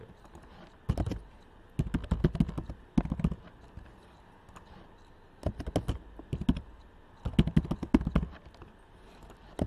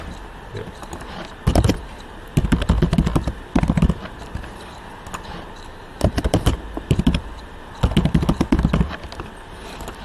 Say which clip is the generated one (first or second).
second